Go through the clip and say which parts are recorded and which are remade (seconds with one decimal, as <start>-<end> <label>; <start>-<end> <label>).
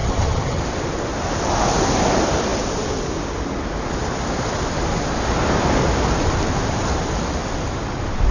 0.0-0.6 remade; 0.6-8.3 recorded